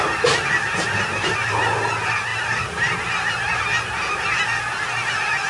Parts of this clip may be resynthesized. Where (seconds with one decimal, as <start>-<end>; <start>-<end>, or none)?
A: 2.3-3.6